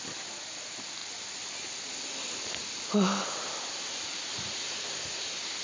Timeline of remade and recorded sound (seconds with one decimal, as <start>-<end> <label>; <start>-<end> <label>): 0.0-5.6 recorded